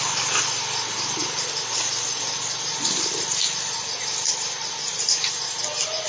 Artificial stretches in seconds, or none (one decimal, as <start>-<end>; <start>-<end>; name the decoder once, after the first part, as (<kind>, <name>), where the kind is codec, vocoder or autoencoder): 1.2-3.8 (vocoder, BigVGAN v2); 4.9-5.6